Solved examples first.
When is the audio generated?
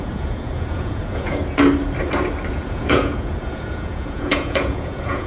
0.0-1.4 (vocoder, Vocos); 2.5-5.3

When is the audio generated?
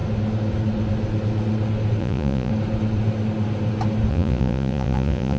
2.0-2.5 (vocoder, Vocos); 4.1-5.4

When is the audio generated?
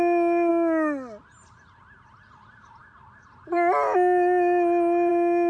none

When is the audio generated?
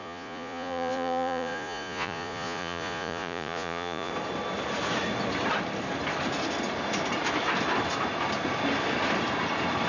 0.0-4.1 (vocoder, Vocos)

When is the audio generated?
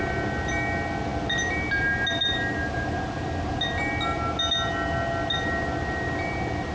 none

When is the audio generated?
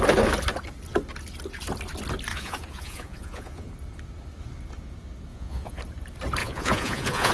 2.3-3.7 (vocoder, Vocos); 5.3-5.8; 6.4-7.3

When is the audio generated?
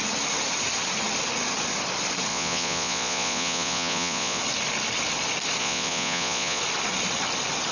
2.3-4.4 (vocoder, Vocos); 5.6-6.6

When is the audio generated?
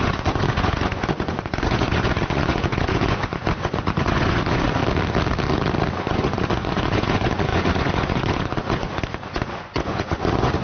0.0-4.8 (vocoder, Vocos); 6.0-10.6